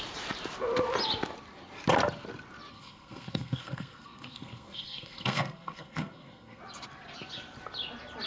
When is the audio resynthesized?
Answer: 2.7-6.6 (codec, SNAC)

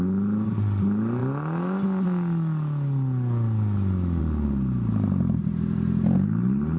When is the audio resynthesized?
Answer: none

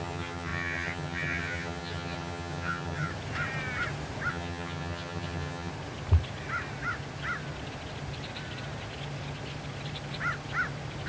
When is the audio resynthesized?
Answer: 0.0-3.1 (vocoder, HiFi-GAN); 4.3-5.7

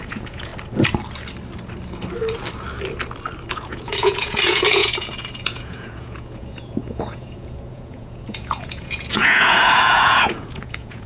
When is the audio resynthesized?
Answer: 0.0-0.5 (vocoder, Vocos); 3.5-11.1

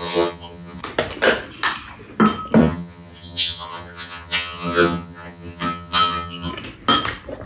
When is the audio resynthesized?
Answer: 0.0-0.8 (vocoder, HiFi-GAN); 2.6-6.5

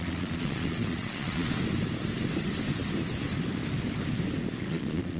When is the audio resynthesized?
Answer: 0.0-1.5 (vocoder, Vocos); 4.6-5.2

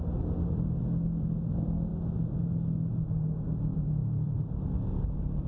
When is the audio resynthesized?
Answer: 4.0-4.5 (vocoder, BigVGAN v2)

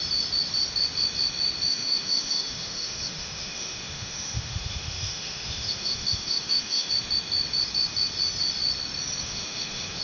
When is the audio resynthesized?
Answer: 1.7-6.9 (autoencoder, DAC-VAE); 9.2-10.0